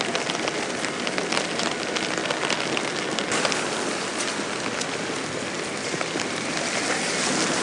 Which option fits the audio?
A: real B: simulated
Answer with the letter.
A